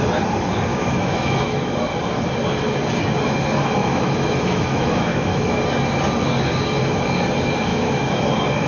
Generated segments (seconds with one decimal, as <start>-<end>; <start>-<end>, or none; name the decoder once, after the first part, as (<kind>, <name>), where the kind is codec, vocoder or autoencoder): 0.7-1.7 (autoencoder, DAC-VAE); 3.8-5.6; 7.7-8.2